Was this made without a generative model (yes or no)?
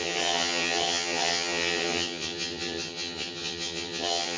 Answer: no